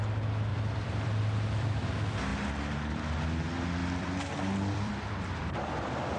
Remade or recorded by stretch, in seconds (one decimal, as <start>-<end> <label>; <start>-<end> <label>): 0.0-0.5 recorded; 0.5-1.9 remade; 1.9-3.8 recorded; 3.8-6.2 remade